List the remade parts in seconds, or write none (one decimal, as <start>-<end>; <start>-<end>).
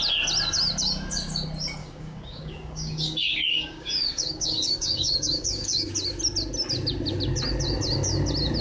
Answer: 1.8-5.9